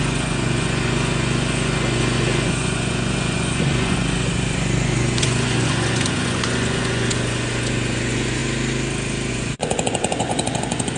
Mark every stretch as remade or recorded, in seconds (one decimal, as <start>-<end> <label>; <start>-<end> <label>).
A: 0.0-8.4 remade; 8.4-9.3 recorded; 9.3-11.0 remade